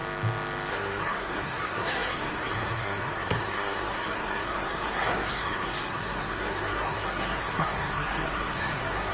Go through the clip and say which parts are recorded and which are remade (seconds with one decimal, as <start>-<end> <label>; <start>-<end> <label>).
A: 0.0-0.7 recorded; 0.7-9.1 remade